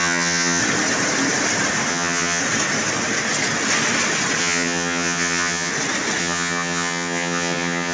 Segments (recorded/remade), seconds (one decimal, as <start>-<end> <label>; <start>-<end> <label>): 0.0-0.6 remade; 0.6-1.9 recorded; 1.9-2.4 remade; 2.4-4.4 recorded; 4.4-5.7 remade; 5.7-6.2 recorded; 6.2-7.9 remade